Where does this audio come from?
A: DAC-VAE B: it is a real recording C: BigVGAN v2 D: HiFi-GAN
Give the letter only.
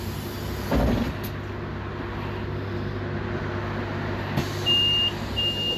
B